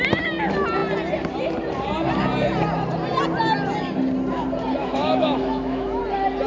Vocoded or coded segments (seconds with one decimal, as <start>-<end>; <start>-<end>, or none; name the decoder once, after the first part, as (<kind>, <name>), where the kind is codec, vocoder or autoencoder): 4.8-6.0 (autoencoder, DAC-VAE)